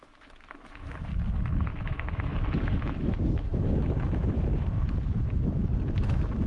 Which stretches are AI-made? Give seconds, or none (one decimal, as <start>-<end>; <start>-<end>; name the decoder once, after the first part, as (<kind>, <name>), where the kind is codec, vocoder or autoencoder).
0.0-1.1 (autoencoder, DAC-VAE); 1.8-2.3; 2.8-6.5